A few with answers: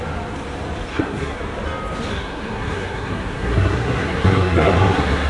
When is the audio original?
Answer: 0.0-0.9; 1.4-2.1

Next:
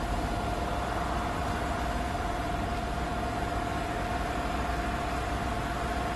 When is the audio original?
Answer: 0.0-1.4; 2.6-6.2

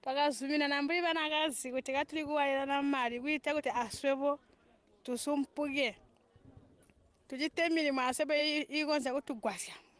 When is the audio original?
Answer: 0.0-10.0

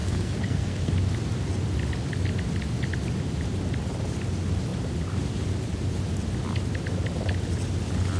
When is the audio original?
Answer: 0.9-8.2

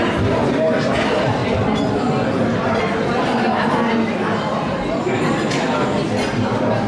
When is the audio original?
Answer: 0.0-6.9

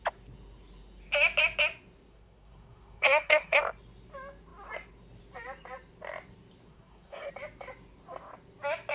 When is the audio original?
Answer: 0.0-2.1; 3.6-6.7; 7.3-8.9

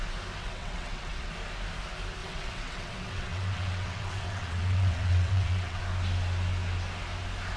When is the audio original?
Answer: 0.0-0.4; 1.3-2.2; 5.8-7.6

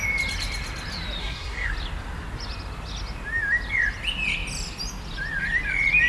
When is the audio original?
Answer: 0.0-1.2; 1.7-6.1